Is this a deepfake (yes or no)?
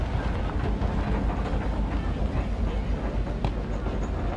no